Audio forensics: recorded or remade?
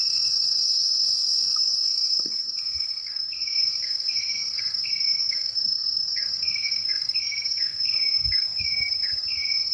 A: remade